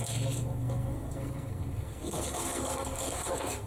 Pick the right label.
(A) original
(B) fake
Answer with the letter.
B